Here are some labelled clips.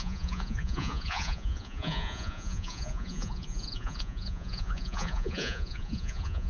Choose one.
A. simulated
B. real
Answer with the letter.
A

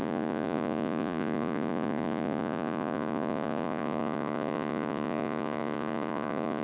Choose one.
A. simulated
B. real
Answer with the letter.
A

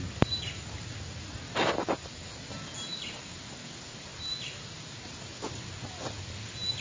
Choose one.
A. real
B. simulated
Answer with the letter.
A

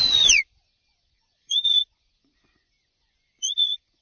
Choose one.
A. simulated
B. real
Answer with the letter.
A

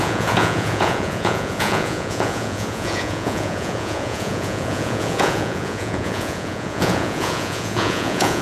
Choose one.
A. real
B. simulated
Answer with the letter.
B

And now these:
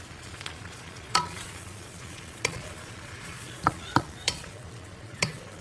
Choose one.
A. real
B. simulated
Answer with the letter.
B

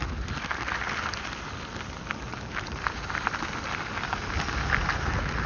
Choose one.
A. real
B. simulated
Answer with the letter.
A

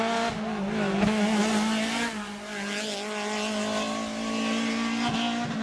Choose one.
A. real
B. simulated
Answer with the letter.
A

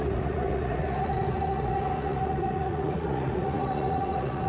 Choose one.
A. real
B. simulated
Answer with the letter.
B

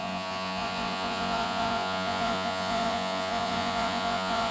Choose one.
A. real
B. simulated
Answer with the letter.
B